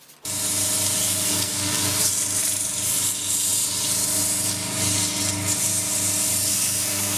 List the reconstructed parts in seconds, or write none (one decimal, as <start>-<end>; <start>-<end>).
1.0-2.1; 6.5-7.2